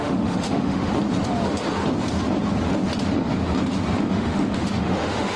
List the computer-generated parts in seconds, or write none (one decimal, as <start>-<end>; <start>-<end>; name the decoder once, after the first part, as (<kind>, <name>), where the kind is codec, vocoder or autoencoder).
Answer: 0.0-0.9 (autoencoder, DAC-VAE); 4.1-5.4